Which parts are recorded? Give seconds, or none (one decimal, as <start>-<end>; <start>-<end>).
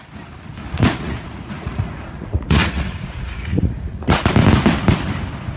0.0-0.8; 4.2-5.6